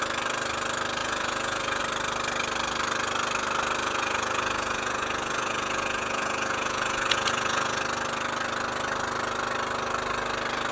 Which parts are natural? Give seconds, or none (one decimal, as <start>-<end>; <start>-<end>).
0.0-1.0; 1.8-3.8; 7.8-10.7